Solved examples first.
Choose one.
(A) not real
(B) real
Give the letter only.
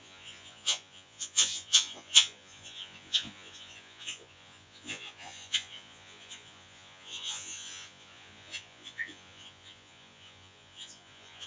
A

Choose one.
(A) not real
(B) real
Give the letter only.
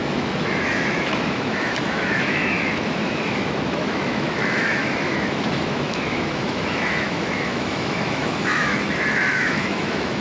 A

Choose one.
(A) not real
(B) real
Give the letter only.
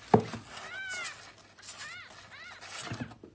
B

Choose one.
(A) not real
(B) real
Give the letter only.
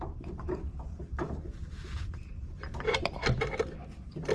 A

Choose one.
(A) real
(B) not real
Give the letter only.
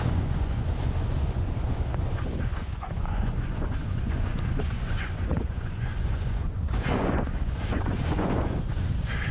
B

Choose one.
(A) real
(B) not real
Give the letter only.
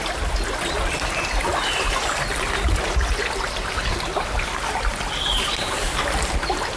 A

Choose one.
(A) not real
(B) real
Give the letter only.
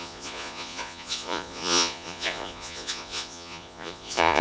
A